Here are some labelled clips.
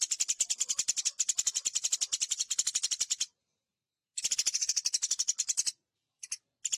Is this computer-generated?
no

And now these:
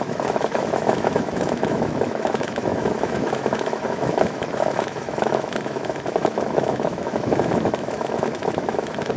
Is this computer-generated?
yes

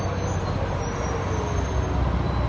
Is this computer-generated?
no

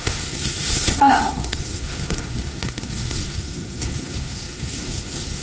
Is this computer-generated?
yes